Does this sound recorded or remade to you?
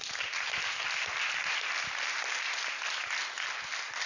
recorded